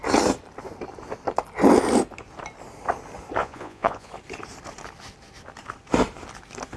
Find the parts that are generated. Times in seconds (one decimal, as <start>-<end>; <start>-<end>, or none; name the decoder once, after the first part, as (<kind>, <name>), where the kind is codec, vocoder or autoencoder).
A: 3.4-4.1 (vocoder, Vocos)